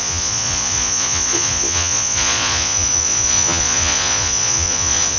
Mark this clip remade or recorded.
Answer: remade